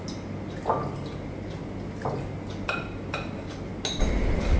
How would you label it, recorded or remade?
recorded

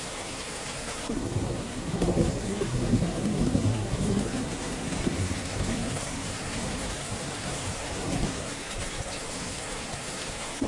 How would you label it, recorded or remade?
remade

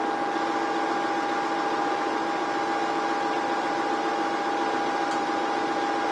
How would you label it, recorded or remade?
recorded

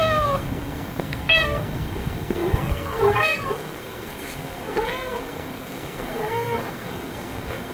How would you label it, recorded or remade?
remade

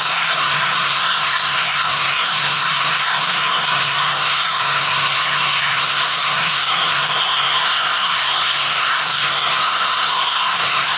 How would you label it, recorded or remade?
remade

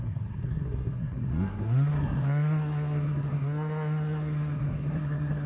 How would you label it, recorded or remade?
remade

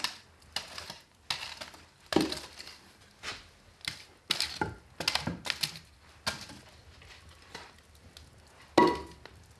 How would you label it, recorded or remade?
recorded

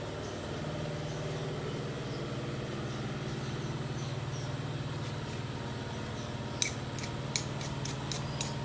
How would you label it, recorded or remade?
recorded